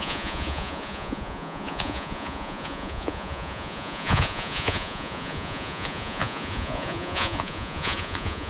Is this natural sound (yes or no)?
no